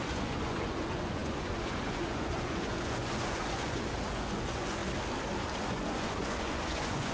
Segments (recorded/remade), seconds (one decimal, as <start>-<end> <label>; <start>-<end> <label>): 0.0-4.8 remade; 4.8-5.6 recorded; 5.6-7.1 remade